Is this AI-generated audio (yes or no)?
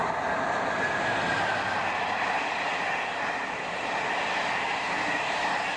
no